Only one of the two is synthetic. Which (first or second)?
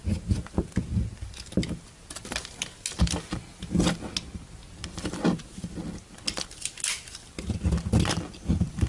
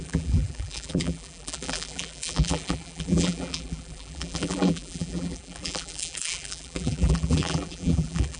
second